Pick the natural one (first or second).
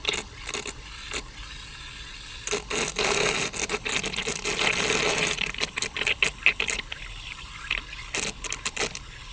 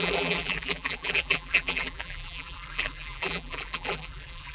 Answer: first